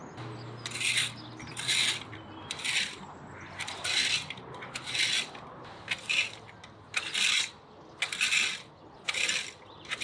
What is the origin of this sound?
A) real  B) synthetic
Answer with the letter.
A